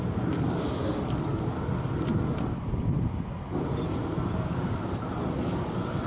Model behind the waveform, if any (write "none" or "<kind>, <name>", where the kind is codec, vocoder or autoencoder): none